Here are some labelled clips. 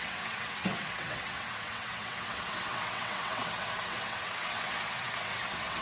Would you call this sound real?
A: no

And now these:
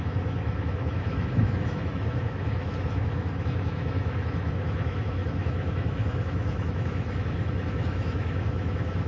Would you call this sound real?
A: no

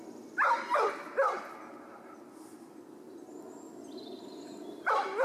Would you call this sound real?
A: yes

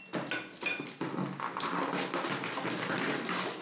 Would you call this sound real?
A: yes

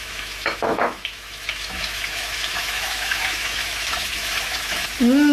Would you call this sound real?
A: no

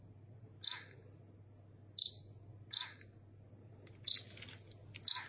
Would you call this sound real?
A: yes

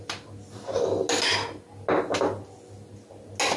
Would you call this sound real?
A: yes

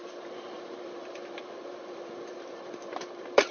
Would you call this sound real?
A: no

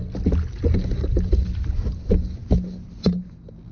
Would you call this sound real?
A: yes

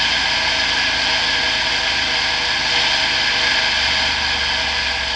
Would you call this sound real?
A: yes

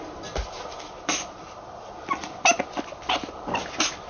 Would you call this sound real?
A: yes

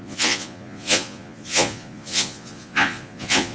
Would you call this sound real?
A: no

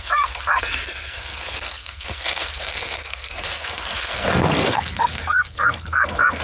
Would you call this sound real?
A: no